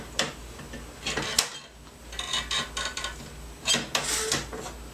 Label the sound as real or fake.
real